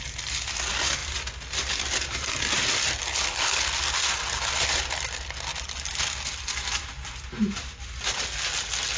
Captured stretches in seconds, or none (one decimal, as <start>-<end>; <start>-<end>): 0.0-3.1; 3.7-9.0